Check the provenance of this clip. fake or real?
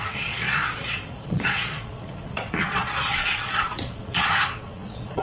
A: fake